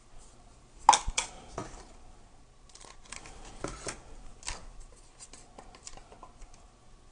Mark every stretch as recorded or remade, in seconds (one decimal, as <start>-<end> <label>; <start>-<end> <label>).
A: 0.0-7.1 recorded